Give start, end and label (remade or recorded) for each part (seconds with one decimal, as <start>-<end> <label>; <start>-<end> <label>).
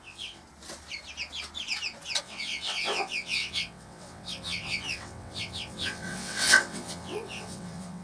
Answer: 0.0-0.4 remade; 0.4-2.2 recorded; 2.2-8.0 remade